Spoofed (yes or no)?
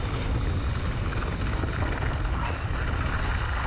no